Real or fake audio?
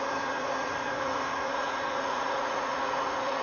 fake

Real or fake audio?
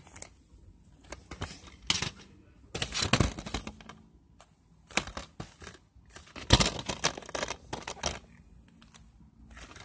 real